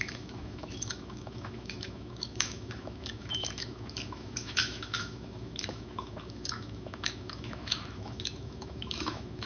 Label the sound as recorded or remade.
remade